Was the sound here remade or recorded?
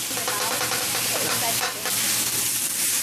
recorded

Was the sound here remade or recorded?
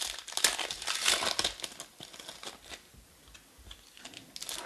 recorded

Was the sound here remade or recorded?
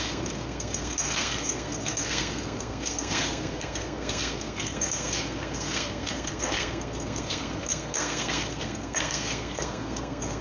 remade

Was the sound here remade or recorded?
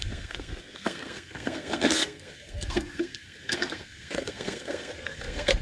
remade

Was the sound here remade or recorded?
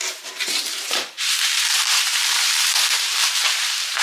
remade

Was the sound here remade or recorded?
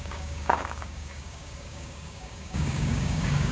remade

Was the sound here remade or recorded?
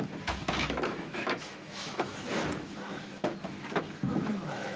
remade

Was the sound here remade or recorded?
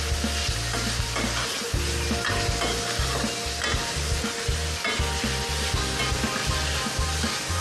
recorded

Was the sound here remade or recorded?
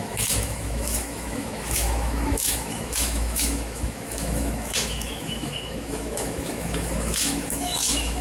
remade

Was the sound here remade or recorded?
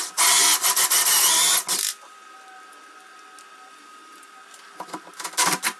recorded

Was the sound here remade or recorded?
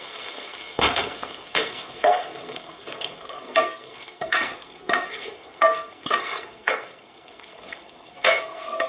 remade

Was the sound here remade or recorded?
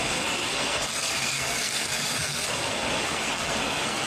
remade